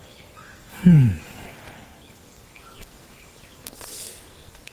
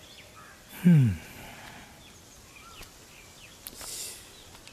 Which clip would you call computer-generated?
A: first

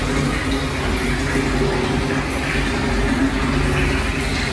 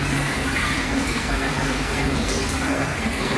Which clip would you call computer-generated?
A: second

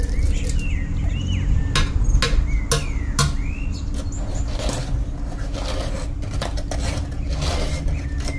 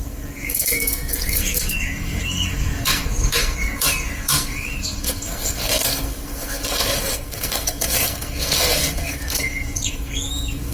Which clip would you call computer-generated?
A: second